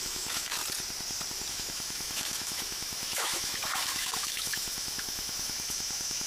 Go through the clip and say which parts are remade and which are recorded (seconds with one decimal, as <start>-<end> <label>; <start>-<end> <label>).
0.0-0.6 remade; 0.6-1.5 recorded; 1.5-6.3 remade